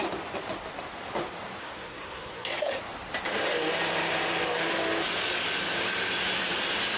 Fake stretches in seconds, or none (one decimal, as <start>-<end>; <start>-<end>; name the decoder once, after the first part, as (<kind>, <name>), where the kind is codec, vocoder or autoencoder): 1.6-2.8 (codec, SNAC)